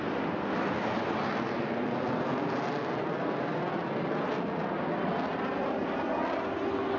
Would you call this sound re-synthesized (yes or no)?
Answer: no